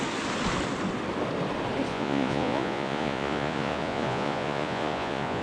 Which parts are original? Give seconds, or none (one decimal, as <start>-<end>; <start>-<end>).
0.0-1.9